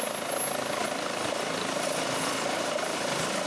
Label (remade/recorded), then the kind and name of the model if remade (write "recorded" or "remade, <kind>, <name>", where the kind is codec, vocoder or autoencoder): recorded